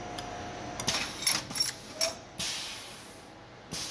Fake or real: real